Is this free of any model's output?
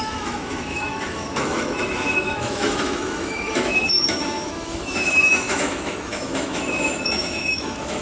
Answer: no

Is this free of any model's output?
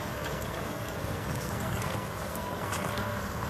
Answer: no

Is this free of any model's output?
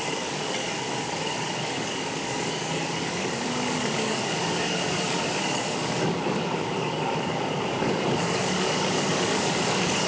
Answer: no